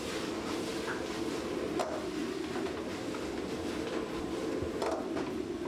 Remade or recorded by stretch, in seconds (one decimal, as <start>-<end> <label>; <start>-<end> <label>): 0.0-5.7 recorded

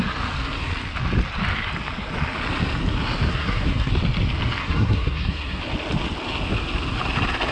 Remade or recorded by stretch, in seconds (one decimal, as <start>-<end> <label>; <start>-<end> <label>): 0.0-3.3 recorded; 3.3-3.9 remade; 3.9-4.6 recorded; 4.6-5.6 remade; 5.6-7.5 recorded

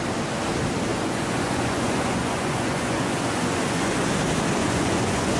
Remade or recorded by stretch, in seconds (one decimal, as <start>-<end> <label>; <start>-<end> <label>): 0.0-0.9 recorded; 0.9-4.1 remade; 4.1-4.6 recorded; 4.6-5.4 remade

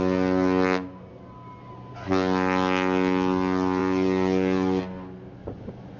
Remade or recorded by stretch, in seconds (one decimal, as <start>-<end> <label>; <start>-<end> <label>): 0.0-3.8 recorded; 3.8-4.8 remade; 4.8-5.4 recorded; 5.4-6.0 remade

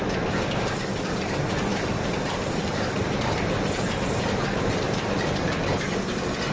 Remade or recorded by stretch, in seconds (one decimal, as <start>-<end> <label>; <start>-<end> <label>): 0.0-1.7 recorded; 1.7-5.6 remade; 5.6-6.5 recorded

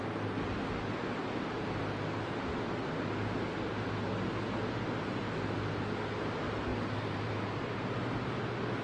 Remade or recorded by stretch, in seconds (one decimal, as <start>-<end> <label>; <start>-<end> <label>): 0.0-6.7 recorded; 6.7-7.3 remade; 7.3-8.8 recorded

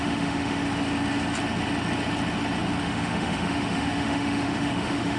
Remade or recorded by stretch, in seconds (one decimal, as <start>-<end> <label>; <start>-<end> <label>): 0.0-0.6 remade; 0.6-2.8 recorded; 2.8-5.2 remade